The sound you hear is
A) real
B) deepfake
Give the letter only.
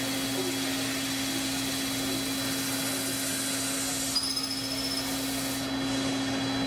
A